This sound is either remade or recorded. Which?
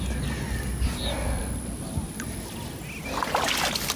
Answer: recorded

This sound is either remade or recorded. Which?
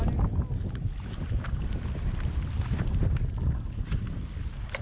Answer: recorded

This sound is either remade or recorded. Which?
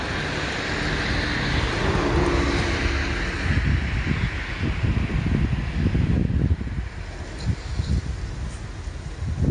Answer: recorded